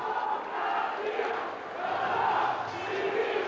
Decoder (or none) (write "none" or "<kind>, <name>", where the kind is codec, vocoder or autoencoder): none